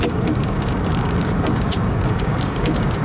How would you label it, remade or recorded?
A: remade